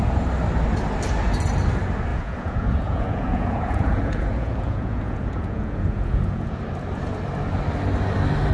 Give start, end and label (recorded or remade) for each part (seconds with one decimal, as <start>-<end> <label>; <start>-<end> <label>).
0.0-2.1 recorded; 2.1-6.6 remade; 6.6-8.5 recorded